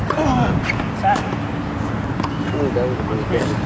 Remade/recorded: recorded